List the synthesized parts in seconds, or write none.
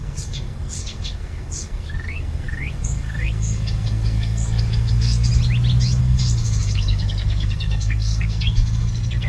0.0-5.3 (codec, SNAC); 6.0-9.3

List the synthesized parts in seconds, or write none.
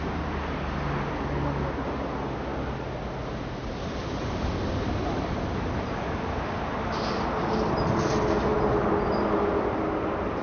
none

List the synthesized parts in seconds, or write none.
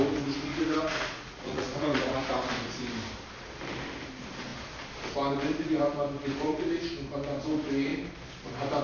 0.5-2.2 (vocoder, Vocos)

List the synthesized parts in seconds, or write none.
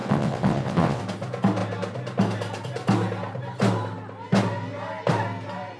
0.0-1.0 (vocoder, WaveNeXt)